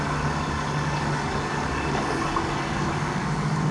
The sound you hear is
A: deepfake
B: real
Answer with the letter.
A